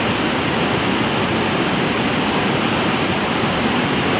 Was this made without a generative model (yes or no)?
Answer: yes